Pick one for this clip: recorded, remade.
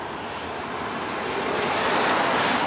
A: recorded